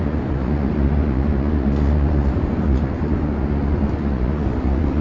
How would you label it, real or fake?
fake